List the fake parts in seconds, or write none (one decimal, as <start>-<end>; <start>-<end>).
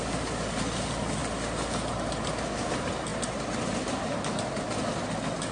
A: none